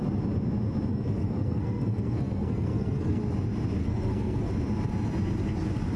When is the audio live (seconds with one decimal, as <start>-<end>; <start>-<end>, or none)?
0.0-0.9; 3.2-3.8; 4.5-6.0

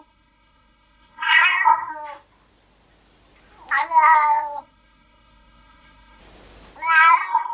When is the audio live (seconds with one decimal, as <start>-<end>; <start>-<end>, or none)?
1.9-4.6; 6.2-7.1

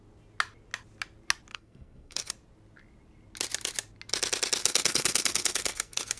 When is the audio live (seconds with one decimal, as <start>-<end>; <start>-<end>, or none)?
0.0-1.5; 2.3-4.6

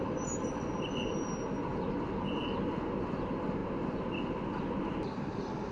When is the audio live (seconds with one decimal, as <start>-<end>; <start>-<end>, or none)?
0.0-5.7